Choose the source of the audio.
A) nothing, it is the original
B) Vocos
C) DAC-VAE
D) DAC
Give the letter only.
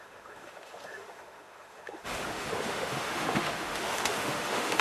C